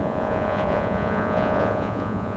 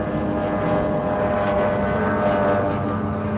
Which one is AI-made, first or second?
first